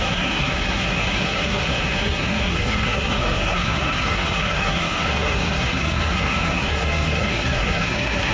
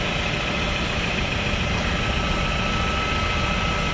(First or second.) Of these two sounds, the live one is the second